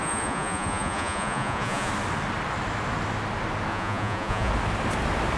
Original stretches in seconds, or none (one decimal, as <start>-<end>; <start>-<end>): 1.9-3.7; 4.5-5.4